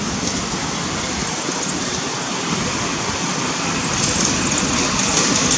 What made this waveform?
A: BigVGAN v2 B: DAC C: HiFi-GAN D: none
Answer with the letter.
D